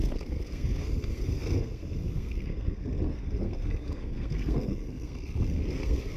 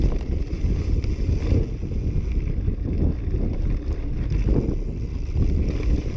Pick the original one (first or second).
second